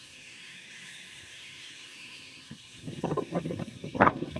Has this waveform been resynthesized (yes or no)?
yes